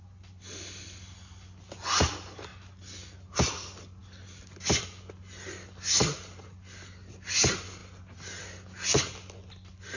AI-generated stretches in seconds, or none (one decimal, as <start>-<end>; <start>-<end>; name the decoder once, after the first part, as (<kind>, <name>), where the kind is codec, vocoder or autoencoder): none